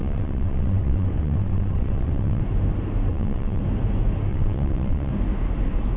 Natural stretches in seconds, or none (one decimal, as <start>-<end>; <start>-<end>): 2.4-3.1; 3.6-4.3; 5.1-6.0